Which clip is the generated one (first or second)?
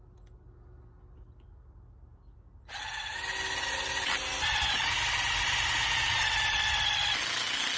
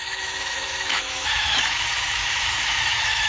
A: second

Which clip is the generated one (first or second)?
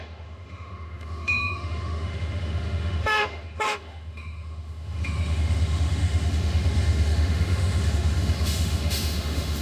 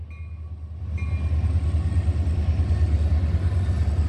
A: first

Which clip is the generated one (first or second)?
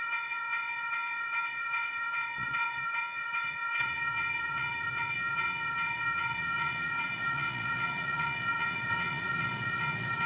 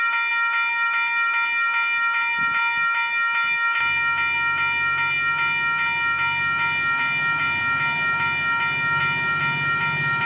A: first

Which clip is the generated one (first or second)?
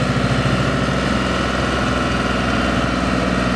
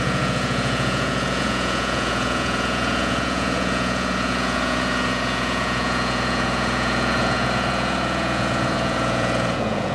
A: second